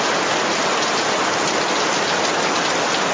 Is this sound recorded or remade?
recorded